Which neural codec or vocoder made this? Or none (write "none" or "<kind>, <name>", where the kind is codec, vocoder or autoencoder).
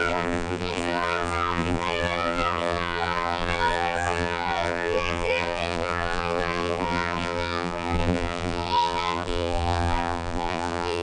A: vocoder, BigVGAN v2